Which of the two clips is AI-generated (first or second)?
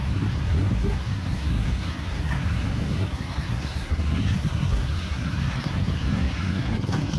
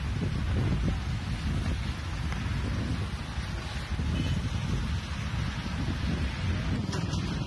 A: first